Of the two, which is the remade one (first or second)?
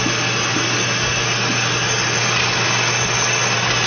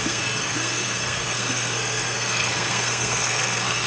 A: second